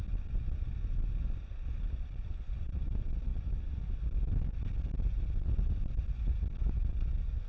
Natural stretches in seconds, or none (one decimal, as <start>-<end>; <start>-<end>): 0.0-7.5